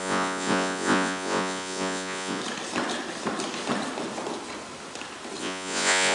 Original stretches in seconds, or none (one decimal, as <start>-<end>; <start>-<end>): 2.4-5.4